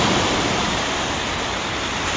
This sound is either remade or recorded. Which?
recorded